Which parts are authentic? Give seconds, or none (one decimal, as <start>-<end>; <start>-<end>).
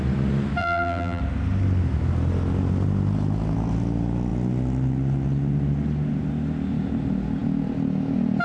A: 0.0-0.6; 1.2-8.4